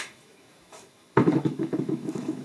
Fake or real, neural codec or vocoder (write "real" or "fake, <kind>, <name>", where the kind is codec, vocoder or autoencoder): fake, autoencoder, DAC-VAE